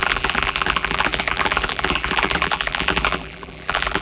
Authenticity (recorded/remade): remade